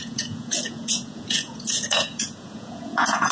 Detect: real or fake fake